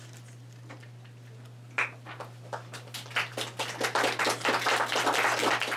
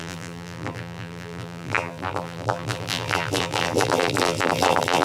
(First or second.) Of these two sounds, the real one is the first